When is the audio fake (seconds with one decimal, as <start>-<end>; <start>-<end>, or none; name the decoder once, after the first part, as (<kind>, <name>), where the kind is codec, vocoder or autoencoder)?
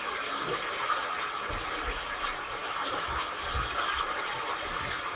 none